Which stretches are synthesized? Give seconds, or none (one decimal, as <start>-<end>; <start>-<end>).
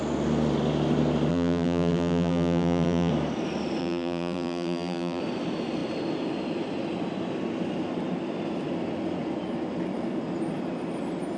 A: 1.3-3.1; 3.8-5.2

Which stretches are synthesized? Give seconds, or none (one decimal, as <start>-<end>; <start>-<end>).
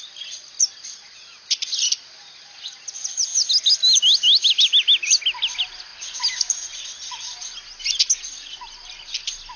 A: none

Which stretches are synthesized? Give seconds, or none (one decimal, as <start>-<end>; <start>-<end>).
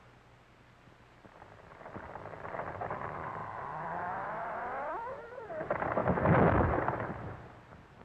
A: 2.7-6.0; 7.3-8.0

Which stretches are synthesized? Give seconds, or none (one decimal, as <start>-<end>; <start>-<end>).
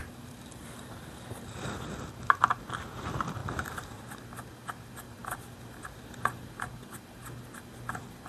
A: 0.0-0.9; 3.4-4.2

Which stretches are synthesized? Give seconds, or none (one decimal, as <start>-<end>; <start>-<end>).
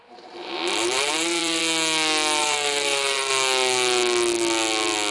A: 0.0-1.6; 2.4-3.3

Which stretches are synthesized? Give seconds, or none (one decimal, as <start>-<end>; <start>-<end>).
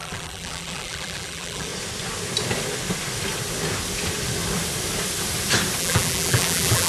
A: 0.0-1.7; 5.8-6.9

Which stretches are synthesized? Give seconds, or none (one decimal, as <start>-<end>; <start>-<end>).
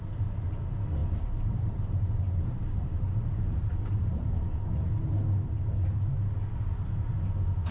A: 1.0-5.0